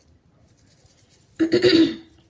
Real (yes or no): yes